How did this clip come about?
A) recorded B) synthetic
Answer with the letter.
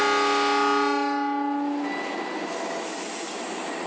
A